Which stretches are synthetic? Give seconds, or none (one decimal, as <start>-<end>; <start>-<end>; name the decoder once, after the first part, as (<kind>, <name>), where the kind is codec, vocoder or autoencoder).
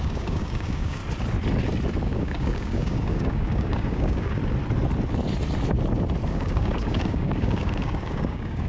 0.0-1.0 (codec, DAC); 2.0-4.4; 6.3-8.7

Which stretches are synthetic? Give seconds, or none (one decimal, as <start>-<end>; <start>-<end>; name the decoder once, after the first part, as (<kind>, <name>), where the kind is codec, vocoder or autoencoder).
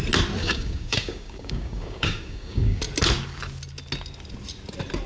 0.4-2.8 (codec, DAC)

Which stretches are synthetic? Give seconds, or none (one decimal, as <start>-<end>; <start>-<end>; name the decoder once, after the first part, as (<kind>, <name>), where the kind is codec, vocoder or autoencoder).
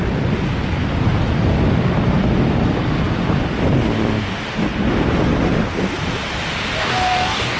6.8-7.6 (codec, DAC)